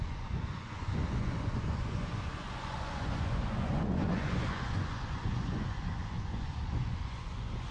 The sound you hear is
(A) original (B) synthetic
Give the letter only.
B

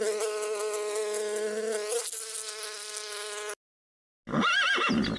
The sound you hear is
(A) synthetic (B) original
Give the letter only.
B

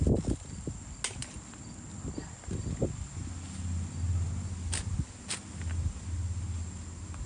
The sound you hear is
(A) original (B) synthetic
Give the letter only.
A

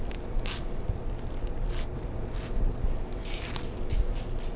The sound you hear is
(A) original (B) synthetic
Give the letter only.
A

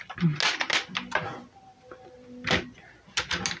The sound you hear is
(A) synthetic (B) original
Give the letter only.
B